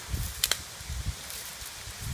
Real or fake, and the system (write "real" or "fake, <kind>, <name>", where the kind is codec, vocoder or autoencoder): real